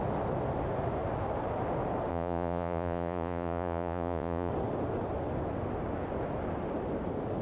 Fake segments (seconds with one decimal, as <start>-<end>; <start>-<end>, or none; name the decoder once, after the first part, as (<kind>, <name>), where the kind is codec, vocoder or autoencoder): 2.1-4.5 (vocoder, Vocos)